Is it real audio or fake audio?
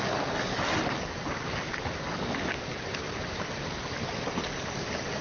real